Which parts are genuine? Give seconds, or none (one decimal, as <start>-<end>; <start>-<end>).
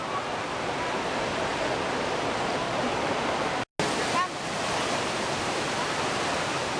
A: 0.0-6.8